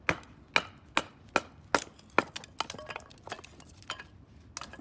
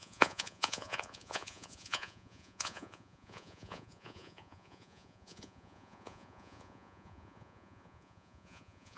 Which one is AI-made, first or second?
second